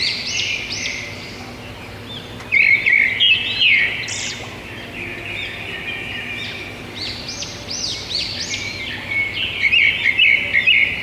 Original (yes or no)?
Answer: yes